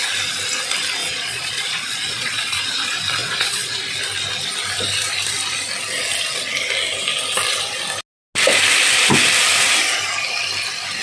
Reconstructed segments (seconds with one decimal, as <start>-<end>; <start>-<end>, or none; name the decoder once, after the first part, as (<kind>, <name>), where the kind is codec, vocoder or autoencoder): 1.0-2.6 (vocoder, Vocos); 3.2-3.8